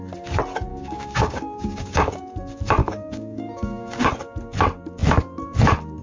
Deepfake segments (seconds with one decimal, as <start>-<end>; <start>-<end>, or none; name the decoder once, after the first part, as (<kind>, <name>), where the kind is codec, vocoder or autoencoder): 0.7-2.2 (codec, DAC); 2.8-4.1